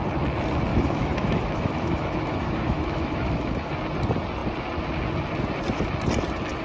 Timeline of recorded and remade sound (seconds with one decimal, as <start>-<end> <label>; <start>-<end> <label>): 0.0-0.7 recorded; 0.7-3.7 remade; 3.7-6.6 recorded